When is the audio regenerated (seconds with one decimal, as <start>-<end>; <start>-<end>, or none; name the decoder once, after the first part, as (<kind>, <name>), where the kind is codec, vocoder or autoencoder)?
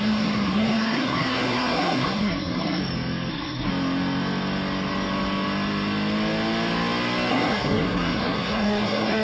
0.0-2.8 (codec, SNAC); 3.3-3.7; 7.3-9.2